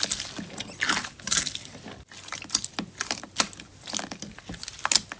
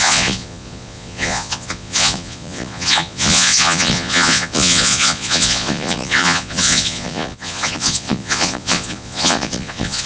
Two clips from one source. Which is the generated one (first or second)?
second